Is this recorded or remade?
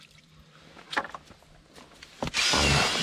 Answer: recorded